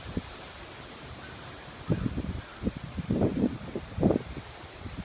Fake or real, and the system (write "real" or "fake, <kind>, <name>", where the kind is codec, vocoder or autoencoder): real